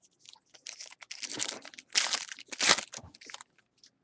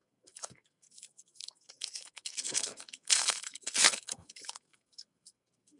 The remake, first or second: second